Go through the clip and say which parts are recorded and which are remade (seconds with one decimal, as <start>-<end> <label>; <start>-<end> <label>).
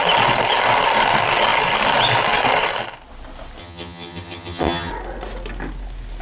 0.0-3.6 recorded; 3.6-4.9 remade; 4.9-6.2 recorded